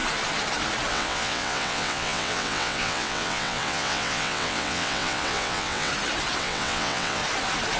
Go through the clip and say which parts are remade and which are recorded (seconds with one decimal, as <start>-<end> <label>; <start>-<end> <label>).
0.0-0.9 recorded; 0.9-5.9 remade; 5.9-6.4 recorded; 6.4-7.2 remade; 7.2-7.8 recorded